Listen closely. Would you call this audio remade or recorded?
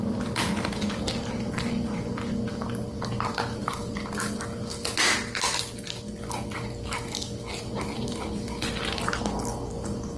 recorded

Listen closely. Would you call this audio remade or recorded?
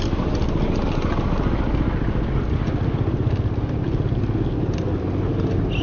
recorded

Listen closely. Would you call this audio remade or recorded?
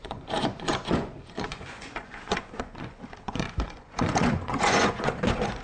remade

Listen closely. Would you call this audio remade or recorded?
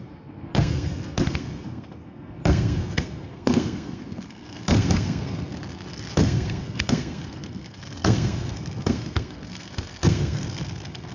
remade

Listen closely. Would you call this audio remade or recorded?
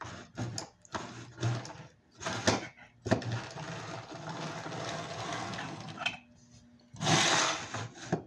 recorded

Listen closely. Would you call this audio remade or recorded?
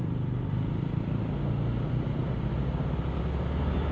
recorded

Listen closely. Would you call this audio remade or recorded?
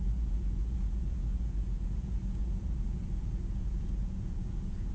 remade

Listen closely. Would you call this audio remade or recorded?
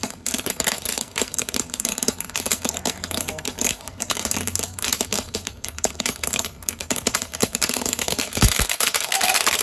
remade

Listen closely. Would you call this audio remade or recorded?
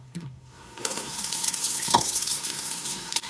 remade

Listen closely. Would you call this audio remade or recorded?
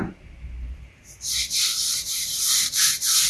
remade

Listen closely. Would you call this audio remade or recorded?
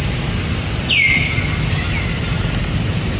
recorded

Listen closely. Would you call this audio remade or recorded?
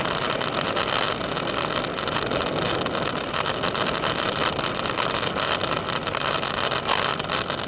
recorded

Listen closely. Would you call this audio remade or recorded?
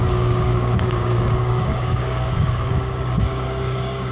remade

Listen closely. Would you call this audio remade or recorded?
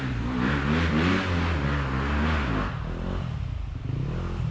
recorded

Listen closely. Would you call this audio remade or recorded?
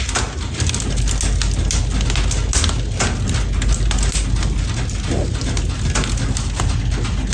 recorded